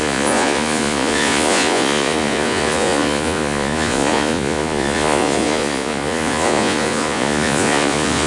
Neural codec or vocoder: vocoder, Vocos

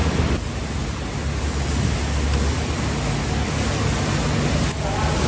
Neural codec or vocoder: none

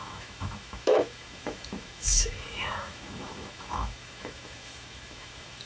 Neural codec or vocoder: autoencoder, DAC-VAE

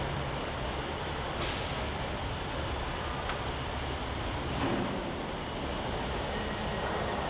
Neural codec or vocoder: none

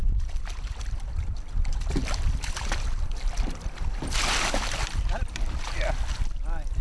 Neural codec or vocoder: vocoder, BigVGAN v2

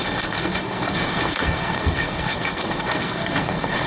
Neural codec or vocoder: codec, SNAC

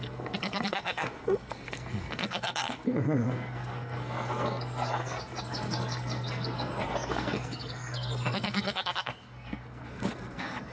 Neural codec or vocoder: codec, SNAC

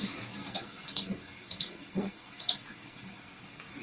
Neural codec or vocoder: codec, SNAC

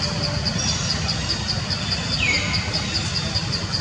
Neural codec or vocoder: none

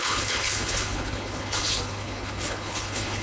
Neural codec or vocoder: codec, HILCodec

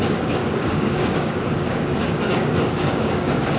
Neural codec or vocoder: codec, DAC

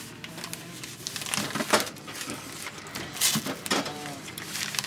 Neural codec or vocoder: none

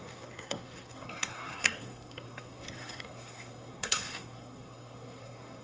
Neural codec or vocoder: codec, SNAC